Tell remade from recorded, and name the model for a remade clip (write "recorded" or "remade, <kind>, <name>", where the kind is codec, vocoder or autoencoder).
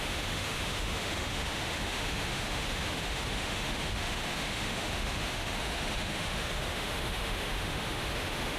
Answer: remade, autoencoder, DAC-VAE